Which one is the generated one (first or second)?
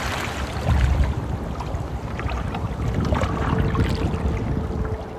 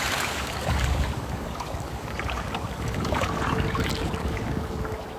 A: second